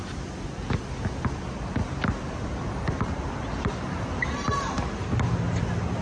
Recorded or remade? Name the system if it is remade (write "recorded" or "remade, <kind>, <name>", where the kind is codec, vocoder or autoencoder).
recorded